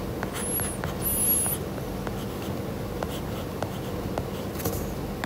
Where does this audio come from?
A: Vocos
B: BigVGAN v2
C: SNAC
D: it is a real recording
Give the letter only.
D